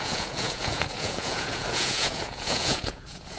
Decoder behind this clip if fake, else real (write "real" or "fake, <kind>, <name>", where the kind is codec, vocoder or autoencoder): fake, vocoder, Vocos